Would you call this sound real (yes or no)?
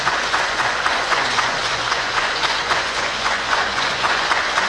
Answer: no